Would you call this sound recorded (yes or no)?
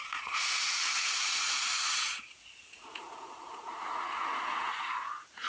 no